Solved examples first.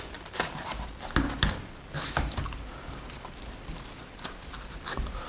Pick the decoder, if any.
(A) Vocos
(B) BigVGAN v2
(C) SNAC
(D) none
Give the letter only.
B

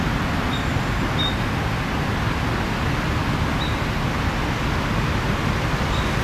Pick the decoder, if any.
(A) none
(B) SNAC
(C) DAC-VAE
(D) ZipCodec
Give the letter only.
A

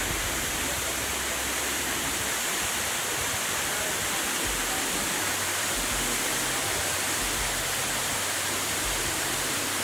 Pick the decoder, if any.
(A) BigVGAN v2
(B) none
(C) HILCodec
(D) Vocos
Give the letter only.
B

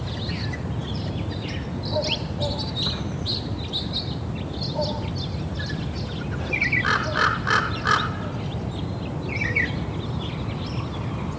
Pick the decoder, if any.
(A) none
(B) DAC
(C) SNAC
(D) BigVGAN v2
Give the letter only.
A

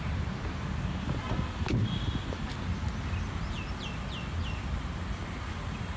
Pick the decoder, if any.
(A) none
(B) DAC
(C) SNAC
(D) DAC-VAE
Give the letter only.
A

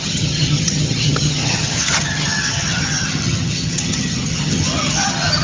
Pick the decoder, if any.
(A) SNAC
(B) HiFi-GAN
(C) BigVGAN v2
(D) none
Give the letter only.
B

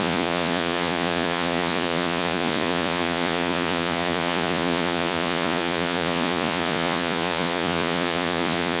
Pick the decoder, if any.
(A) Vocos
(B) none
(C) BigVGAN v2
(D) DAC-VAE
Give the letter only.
A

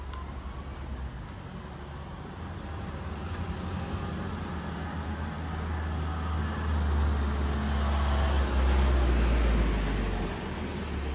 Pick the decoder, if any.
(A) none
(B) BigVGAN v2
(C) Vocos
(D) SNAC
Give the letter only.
A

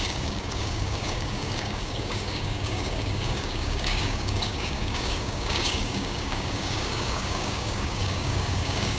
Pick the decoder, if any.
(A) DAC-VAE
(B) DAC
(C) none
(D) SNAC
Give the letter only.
B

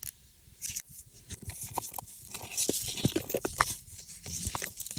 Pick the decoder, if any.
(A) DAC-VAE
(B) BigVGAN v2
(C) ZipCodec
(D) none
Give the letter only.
D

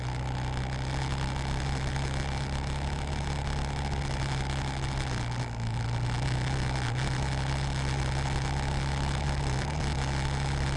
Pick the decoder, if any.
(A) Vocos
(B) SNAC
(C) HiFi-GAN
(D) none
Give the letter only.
D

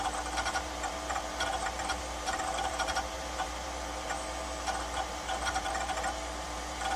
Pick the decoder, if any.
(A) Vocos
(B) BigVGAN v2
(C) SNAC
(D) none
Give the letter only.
B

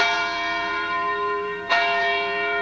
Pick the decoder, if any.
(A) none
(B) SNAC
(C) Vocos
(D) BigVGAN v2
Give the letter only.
D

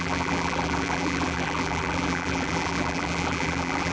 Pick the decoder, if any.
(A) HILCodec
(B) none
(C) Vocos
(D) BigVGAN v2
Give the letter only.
D